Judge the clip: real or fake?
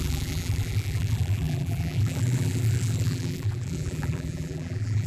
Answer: fake